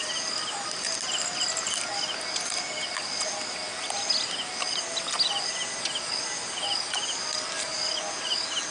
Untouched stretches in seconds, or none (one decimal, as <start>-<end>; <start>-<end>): 0.0-8.7